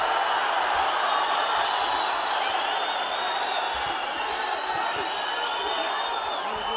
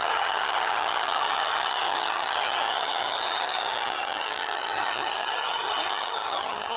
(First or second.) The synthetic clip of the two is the second